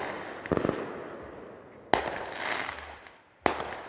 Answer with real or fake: real